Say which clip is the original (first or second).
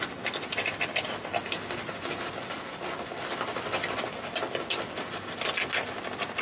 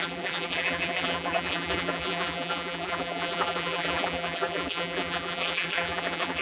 first